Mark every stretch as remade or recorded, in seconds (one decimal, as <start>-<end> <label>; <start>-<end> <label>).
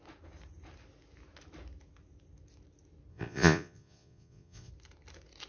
0.0-3.1 recorded; 3.1-4.7 remade; 4.7-5.5 recorded